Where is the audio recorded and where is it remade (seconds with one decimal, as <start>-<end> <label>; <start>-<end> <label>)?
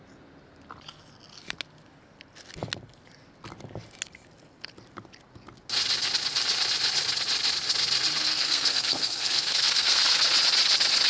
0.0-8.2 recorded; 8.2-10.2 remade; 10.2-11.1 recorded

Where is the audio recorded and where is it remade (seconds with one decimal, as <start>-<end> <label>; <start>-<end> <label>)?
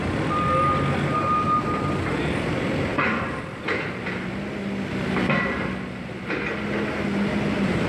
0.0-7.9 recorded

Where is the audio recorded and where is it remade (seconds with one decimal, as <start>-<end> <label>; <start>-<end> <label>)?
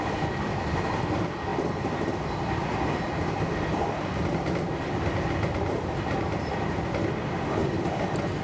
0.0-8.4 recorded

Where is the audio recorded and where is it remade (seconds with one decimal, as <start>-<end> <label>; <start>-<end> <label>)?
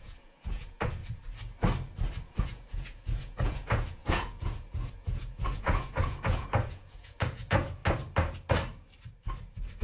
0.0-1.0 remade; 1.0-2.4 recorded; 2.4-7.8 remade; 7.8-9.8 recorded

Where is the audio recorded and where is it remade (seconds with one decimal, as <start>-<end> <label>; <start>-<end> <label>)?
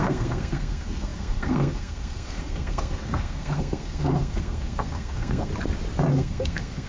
0.0-5.5 remade; 5.5-6.1 recorded; 6.1-6.9 remade